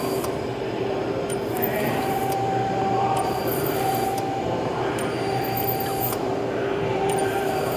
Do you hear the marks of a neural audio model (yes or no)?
yes